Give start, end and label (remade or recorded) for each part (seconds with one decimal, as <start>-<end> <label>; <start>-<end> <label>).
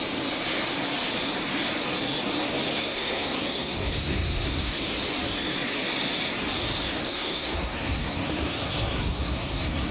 0.0-2.7 recorded; 2.7-4.8 remade; 4.8-7.0 recorded; 7.0-9.9 remade